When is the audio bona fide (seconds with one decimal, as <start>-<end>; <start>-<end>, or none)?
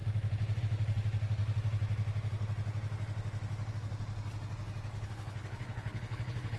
0.0-4.9